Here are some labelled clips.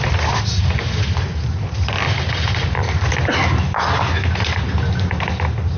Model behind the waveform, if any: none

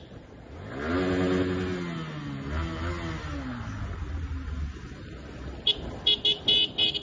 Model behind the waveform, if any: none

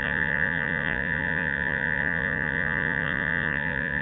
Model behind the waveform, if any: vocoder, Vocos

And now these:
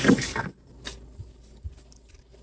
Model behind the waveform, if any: none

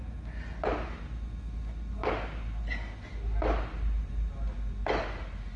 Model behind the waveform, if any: vocoder, BigVGAN v2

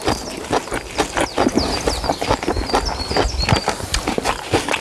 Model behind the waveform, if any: none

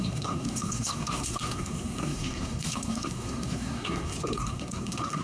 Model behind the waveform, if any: codec, SNAC